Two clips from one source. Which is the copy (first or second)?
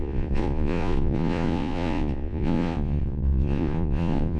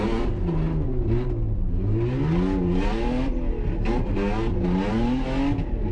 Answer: first